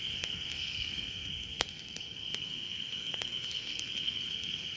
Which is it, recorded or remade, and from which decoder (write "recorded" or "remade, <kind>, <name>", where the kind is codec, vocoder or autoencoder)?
remade, codec, SNAC